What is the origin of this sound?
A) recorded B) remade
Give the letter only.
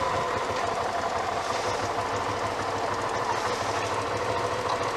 A